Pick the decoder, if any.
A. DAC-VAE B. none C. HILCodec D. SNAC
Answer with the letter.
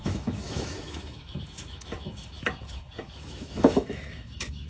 A